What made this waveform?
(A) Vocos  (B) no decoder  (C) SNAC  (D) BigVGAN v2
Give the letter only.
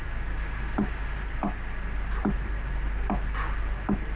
B